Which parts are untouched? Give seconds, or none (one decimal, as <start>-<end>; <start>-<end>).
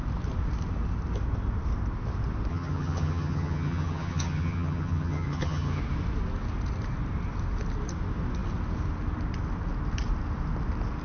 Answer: 0.0-2.5; 5.8-11.0